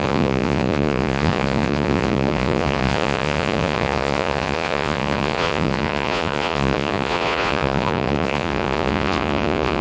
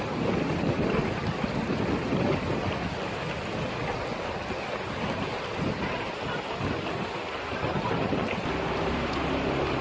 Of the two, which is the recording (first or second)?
second